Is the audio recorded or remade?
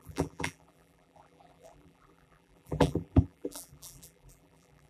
remade